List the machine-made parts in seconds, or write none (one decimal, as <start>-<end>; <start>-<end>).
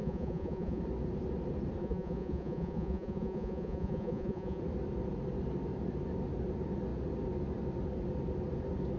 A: 0.0-0.8; 1.8-4.6